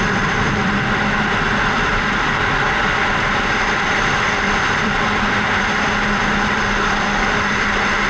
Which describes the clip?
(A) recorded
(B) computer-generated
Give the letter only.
B